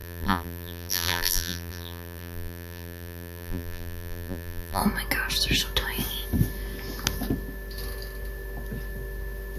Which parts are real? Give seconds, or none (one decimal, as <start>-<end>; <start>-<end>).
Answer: 4.8-9.6